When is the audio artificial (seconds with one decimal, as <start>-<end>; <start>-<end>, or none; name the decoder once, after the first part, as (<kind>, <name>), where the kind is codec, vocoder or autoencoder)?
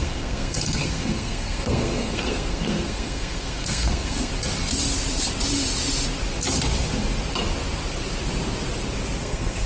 0.0-4.3 (codec, SNAC); 9.2-9.7